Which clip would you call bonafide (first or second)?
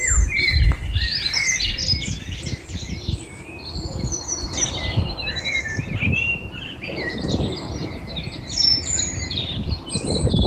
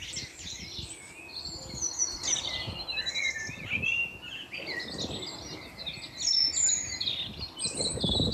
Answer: second